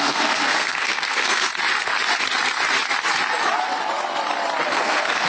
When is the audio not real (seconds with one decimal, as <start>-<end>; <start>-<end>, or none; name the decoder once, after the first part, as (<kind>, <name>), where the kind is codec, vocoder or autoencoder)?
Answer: 0.0-1.5 (codec, SNAC); 4.7-5.3